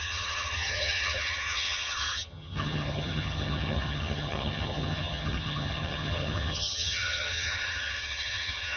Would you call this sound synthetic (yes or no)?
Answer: yes